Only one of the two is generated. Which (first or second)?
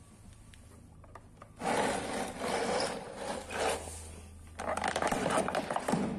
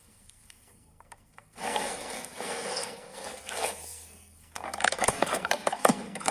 second